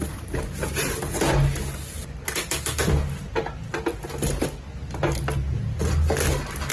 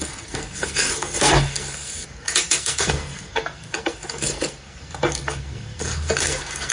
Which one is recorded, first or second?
first